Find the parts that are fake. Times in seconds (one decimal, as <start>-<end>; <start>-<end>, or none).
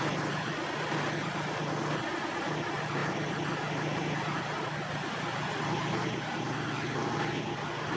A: none